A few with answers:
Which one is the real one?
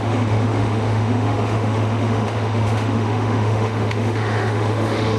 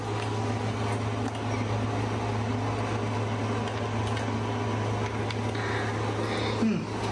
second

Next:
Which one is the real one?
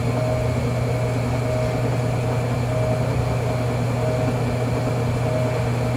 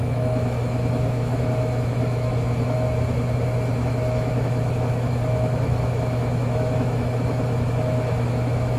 first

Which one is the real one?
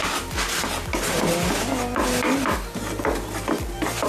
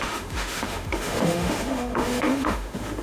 first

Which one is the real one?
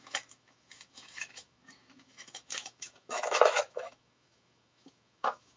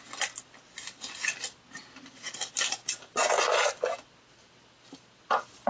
second